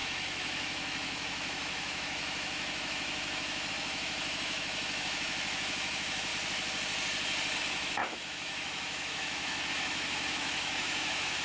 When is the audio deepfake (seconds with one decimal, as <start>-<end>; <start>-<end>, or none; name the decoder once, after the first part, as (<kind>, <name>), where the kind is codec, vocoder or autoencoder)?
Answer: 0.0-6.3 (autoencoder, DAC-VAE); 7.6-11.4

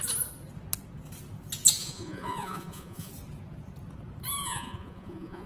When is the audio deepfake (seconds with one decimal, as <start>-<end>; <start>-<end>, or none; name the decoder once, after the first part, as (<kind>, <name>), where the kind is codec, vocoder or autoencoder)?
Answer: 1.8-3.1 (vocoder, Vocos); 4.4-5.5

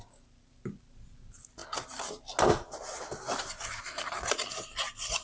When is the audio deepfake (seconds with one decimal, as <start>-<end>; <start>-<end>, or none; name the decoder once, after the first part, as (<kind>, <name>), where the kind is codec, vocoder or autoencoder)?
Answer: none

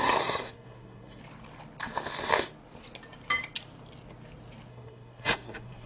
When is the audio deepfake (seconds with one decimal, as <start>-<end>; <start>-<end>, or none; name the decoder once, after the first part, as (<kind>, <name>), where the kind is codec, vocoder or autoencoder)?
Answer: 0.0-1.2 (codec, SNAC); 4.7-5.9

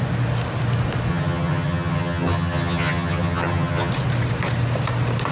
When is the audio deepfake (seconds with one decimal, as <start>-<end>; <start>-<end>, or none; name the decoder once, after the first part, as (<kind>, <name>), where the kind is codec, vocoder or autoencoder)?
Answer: 1.1-3.9 (vocoder, HiFi-GAN)

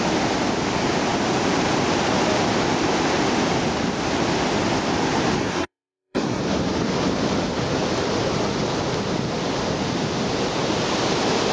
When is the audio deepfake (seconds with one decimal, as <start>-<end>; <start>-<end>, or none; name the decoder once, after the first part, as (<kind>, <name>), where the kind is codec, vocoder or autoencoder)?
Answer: 5.4-6.4 (codec, SNAC)

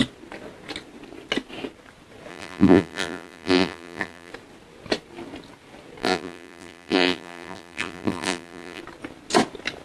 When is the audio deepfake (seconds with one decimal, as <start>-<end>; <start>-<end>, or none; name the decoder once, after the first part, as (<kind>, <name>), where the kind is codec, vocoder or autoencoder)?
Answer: 2.3-4.3 (vocoder, BigVGAN v2); 6.0-8.8